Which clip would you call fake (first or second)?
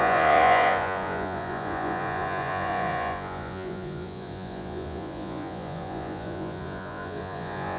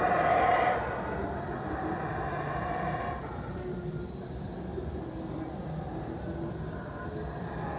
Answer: first